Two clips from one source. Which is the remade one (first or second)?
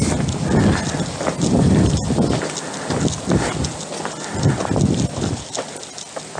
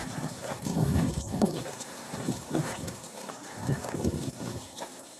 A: second